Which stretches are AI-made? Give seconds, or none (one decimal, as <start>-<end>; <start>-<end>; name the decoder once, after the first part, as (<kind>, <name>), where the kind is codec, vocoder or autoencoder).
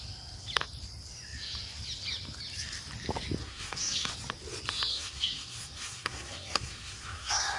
3.4-4.1 (codec, SNAC); 4.9-7.6